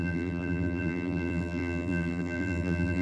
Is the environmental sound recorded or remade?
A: remade